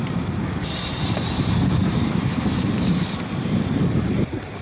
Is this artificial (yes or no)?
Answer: yes